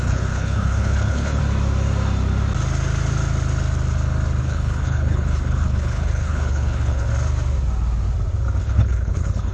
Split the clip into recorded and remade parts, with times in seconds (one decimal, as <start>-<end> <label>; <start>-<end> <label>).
0.0-1.4 remade; 1.4-4.4 recorded; 4.4-7.1 remade; 7.1-8.6 recorded; 8.6-9.5 remade